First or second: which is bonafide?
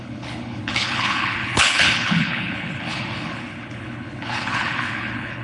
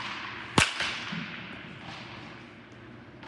second